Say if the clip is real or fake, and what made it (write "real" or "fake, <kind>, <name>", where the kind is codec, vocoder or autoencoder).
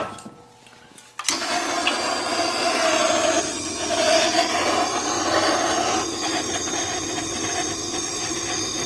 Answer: real